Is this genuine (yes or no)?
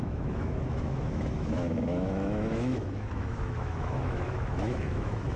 no